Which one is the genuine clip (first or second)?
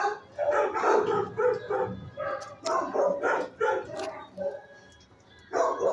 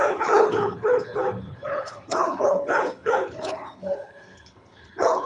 first